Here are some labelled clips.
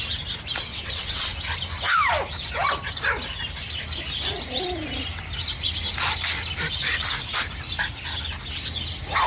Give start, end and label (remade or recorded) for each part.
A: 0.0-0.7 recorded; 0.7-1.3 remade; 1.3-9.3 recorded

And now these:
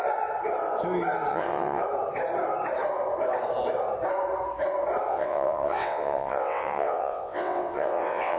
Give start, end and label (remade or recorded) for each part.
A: 0.0-1.3 recorded; 1.3-1.8 remade; 1.8-5.1 recorded; 5.1-8.4 remade

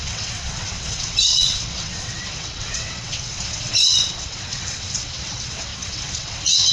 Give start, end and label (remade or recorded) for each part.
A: 0.0-6.7 remade